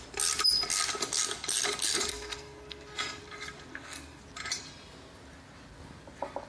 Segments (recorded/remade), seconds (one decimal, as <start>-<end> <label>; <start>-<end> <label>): 0.0-2.1 recorded; 2.1-3.2 remade; 3.2-3.7 recorded; 3.7-4.2 remade; 4.2-6.5 recorded